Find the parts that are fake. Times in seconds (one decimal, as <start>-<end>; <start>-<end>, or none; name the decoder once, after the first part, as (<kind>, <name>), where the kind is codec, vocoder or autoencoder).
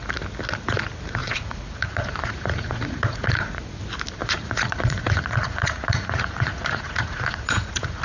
1.2-3.8 (vocoder, Vocos); 4.2-8.0